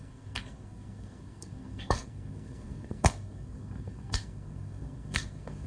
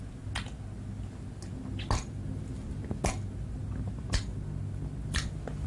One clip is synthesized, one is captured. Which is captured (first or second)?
second